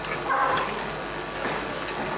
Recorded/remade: recorded